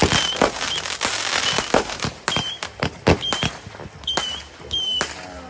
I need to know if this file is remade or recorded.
recorded